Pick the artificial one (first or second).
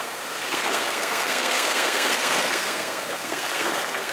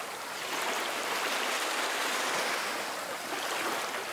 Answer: first